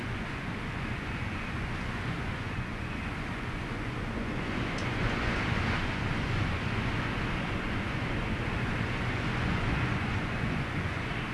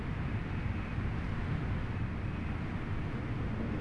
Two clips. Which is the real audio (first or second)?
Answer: second